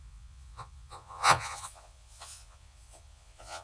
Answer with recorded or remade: remade